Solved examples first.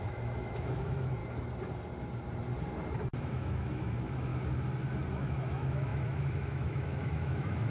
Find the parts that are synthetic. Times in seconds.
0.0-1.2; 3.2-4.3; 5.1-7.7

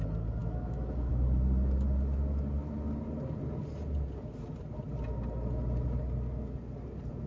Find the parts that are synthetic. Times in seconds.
0.4-1.1